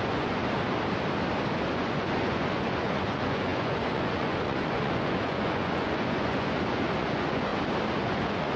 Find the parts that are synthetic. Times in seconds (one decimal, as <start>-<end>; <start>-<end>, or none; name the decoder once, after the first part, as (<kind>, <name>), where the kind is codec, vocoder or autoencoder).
0.0-0.4 (vocoder, Vocos); 1.7-7.5; 8.0-8.6